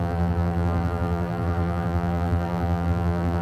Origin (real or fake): fake